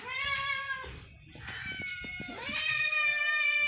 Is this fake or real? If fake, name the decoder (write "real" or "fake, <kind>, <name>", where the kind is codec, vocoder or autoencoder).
real